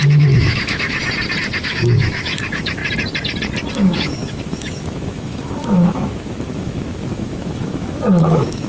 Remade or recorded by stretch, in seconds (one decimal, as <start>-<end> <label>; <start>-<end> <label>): 0.0-1.0 remade; 1.0-1.6 recorded; 1.6-2.8 remade; 2.8-3.7 recorded; 3.7-8.7 remade